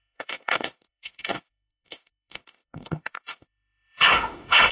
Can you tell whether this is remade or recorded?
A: remade